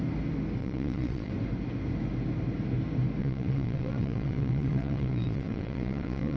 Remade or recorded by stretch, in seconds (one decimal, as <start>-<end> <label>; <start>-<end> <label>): 0.0-0.6 recorded; 0.6-1.3 remade; 1.3-3.2 recorded; 3.2-6.4 remade